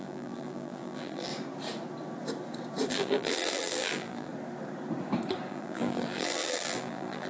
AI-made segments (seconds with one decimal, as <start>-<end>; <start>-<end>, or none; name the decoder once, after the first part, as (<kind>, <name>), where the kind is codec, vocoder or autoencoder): 0.0-1.3 (vocoder, BigVGAN v2); 2.9-4.3; 5.5-7.3

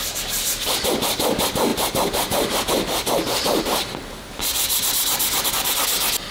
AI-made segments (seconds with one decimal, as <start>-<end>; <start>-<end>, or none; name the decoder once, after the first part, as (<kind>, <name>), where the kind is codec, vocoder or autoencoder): none